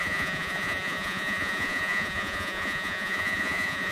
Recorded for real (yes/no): no